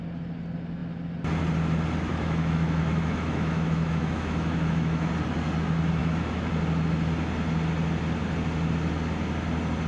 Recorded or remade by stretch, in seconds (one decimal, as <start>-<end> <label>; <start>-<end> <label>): 0.0-2.1 recorded; 2.1-5.1 remade; 5.1-6.0 recorded; 6.0-6.5 remade; 6.5-9.9 recorded